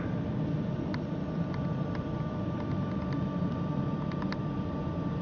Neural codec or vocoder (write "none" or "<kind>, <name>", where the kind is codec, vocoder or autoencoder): vocoder, BigVGAN v2